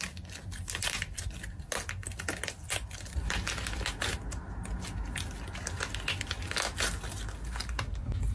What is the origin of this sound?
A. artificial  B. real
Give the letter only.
B